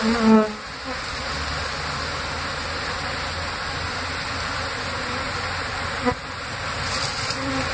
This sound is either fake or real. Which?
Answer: real